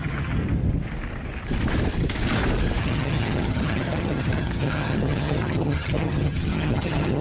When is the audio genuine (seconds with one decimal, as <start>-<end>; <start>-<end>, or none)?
0.4-2.8